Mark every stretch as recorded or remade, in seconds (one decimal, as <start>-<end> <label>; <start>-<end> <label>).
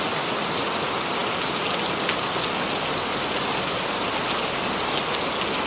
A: 0.0-5.7 recorded